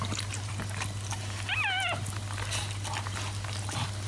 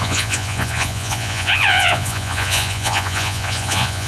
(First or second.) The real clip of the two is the first